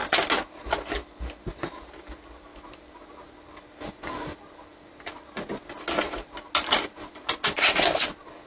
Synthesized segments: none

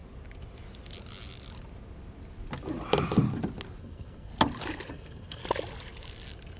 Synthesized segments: 3.8-4.3; 4.9-5.4

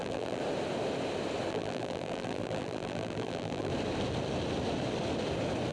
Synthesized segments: 0.0-0.4; 1.5-3.7

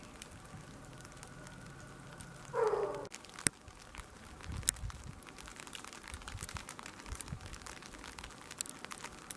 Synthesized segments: 5.5-7.4

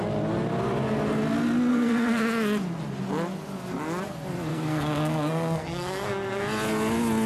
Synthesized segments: 1.7-2.2; 4.5-6.4

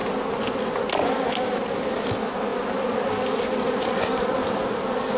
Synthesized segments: none

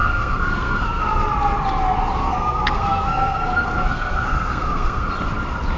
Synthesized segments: 0.0-1.0; 2.2-5.1

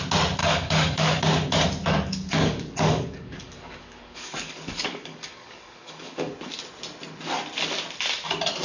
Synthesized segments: 0.4-1.2; 1.8-6.3